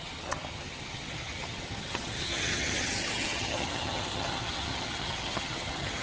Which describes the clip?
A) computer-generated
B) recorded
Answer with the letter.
A